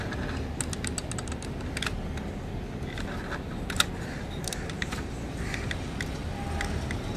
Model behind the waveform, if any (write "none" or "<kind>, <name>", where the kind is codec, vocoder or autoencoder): none